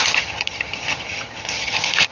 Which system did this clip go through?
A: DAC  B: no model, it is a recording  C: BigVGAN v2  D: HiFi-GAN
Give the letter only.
D